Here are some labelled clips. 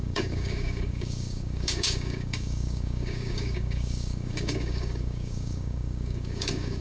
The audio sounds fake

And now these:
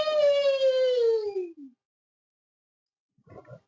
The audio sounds real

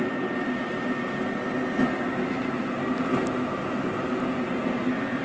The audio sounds real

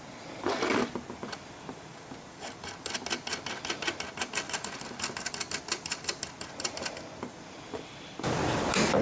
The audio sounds real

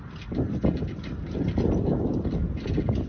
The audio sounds real